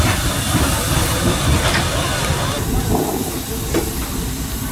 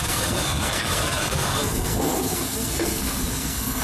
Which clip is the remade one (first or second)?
second